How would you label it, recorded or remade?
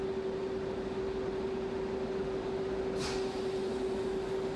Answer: recorded